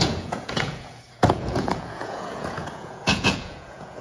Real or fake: fake